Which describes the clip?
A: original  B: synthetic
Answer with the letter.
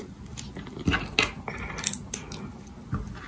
A